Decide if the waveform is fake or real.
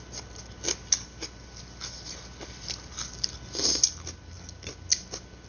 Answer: real